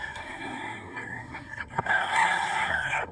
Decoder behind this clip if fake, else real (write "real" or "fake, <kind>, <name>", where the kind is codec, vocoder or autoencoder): fake, codec, SNAC